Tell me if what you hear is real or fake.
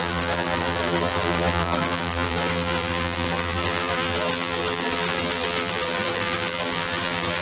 fake